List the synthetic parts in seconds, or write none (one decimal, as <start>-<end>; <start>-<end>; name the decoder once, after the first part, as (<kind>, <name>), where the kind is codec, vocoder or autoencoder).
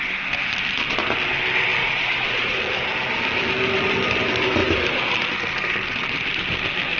1.8-2.6 (vocoder, Vocos)